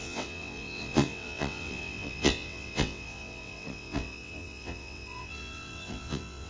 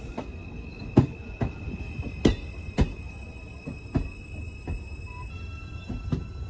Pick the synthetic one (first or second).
first